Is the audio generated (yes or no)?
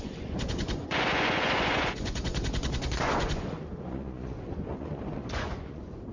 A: yes